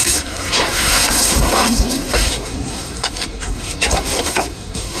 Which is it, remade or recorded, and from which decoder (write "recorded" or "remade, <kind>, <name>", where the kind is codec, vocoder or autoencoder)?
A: remade, codec, SNAC